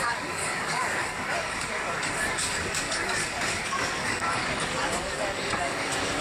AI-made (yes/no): yes